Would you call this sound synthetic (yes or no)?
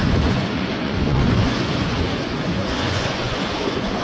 yes